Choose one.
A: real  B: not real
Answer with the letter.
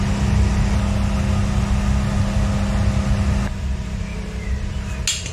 A